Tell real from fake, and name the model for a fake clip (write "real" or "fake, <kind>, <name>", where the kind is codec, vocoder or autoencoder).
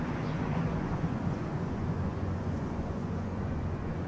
fake, vocoder, Vocos